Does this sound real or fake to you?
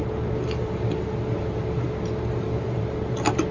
real